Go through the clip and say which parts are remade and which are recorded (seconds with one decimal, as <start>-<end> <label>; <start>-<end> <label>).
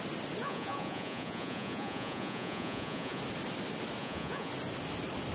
0.0-0.4 recorded; 0.4-3.2 remade; 3.2-4.0 recorded; 4.0-4.5 remade; 4.5-5.3 recorded